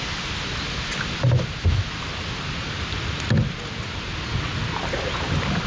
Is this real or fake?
real